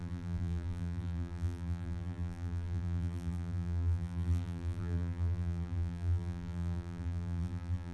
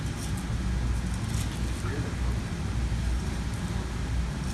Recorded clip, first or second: second